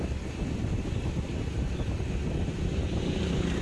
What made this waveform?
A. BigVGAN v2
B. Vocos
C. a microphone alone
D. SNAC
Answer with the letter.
C